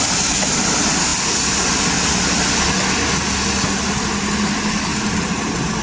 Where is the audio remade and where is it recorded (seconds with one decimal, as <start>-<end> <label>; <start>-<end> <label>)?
0.0-5.8 recorded